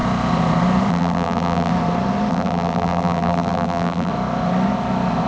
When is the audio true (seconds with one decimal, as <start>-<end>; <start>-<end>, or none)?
0.0-0.9; 1.7-2.3; 4.1-5.3